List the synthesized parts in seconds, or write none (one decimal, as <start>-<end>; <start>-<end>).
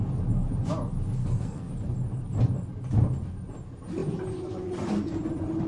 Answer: 1.2-1.7